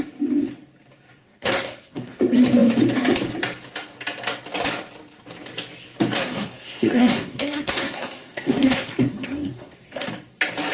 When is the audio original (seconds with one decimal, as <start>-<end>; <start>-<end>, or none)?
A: 0.0-1.2; 2.2-6.2; 10.1-10.7